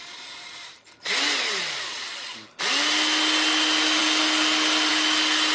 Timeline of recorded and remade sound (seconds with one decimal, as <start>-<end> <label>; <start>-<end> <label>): 0.0-5.5 recorded